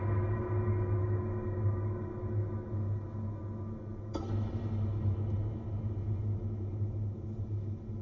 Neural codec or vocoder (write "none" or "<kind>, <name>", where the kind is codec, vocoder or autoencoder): autoencoder, DAC-VAE